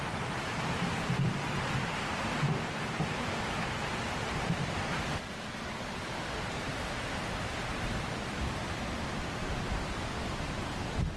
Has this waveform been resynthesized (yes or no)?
yes